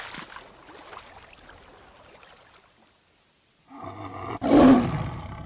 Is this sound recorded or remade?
recorded